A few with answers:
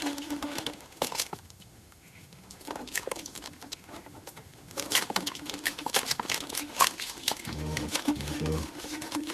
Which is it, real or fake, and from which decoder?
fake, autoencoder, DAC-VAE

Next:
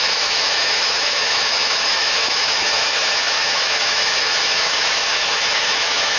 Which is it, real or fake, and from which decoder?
fake, autoencoder, DAC-VAE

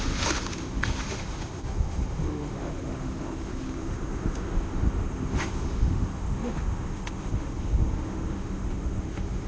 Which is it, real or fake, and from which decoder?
fake, autoencoder, DAC-VAE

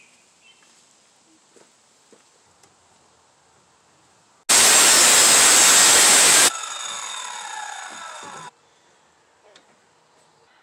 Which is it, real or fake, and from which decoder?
real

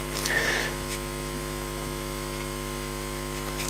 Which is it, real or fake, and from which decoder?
fake, autoencoder, DAC-VAE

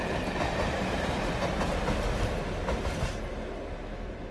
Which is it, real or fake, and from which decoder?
real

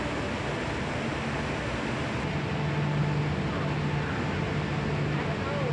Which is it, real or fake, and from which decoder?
real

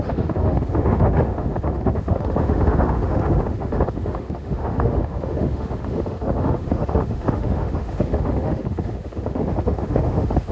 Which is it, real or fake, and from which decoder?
fake, autoencoder, DAC-VAE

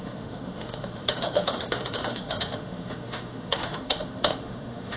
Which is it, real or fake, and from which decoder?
fake, autoencoder, DAC-VAE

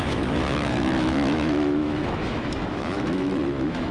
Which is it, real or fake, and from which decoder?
fake, autoencoder, DAC-VAE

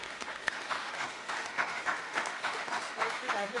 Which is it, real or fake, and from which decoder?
fake, autoencoder, DAC-VAE